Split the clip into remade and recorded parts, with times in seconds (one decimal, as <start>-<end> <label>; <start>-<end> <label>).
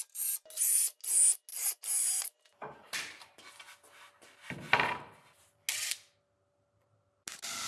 0.0-1.5 recorded; 1.5-2.4 remade; 2.4-2.8 recorded; 2.8-3.4 remade; 3.4-7.7 recorded